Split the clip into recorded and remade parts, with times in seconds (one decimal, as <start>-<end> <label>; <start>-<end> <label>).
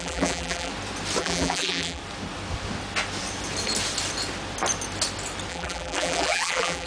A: 0.0-0.7 remade; 0.7-1.2 recorded; 1.2-2.0 remade; 2.0-5.5 recorded; 5.5-6.9 remade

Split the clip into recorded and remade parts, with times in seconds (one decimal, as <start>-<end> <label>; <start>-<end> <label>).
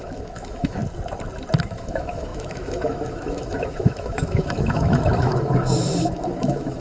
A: 0.0-0.8 remade; 0.8-1.6 recorded; 1.6-6.8 remade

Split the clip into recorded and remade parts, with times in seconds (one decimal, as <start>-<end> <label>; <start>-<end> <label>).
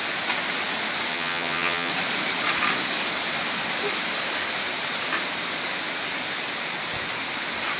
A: 0.0-1.1 recorded; 1.1-1.9 remade; 1.9-7.8 recorded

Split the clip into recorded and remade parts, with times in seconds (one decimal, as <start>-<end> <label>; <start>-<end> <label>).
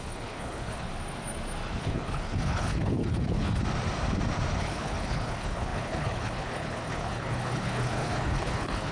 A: 0.0-0.9 remade; 0.9-1.8 recorded; 1.8-3.6 remade; 3.6-4.6 recorded; 4.6-8.9 remade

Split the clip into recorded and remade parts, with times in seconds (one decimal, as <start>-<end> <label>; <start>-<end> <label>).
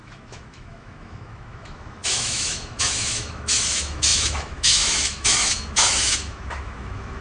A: 0.0-7.2 remade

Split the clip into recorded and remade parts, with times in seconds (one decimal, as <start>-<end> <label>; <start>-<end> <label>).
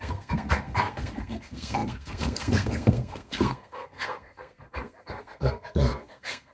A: 0.0-6.5 remade